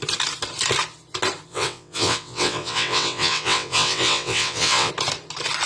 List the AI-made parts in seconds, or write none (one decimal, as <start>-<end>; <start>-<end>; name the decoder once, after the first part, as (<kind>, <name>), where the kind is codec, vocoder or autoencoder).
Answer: 1.5-4.9 (vocoder, WaveNeXt)